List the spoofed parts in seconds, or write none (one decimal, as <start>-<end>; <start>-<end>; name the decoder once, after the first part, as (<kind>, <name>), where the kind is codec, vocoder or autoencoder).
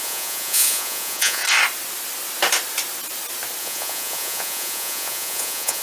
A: 0.0-1.4 (vocoder, Vocos); 3.6-5.8